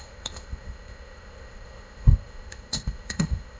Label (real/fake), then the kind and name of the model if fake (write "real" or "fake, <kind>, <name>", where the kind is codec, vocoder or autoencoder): fake, codec, ZipCodec